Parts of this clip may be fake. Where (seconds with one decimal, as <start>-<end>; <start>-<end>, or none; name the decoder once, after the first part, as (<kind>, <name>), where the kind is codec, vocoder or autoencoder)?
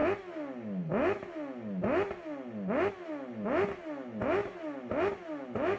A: none